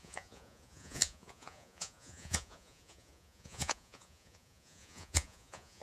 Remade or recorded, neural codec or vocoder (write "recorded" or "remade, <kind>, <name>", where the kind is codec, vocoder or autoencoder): remade, vocoder, Vocos